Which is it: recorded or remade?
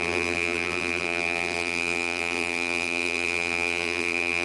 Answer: remade